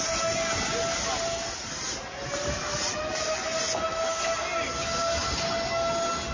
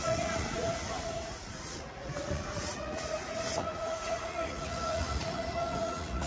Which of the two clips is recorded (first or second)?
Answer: first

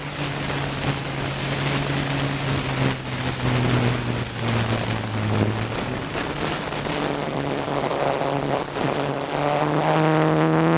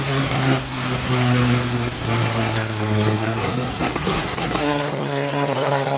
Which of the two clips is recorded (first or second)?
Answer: first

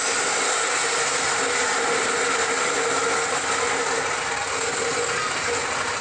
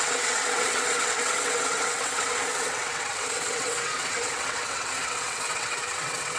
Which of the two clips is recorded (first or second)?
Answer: first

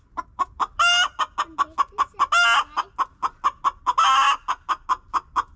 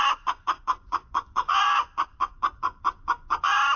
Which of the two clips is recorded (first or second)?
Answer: first